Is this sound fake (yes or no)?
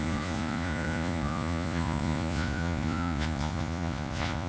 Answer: yes